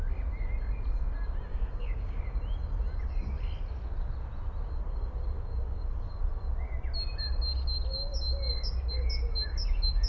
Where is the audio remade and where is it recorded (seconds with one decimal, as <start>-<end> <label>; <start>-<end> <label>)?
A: 0.0-1.5 recorded; 1.5-2.2 remade; 2.2-10.1 recorded